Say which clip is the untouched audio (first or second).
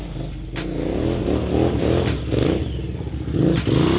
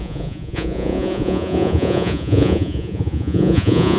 first